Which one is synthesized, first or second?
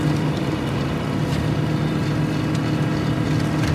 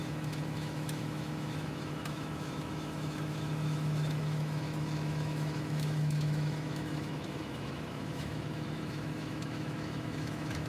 second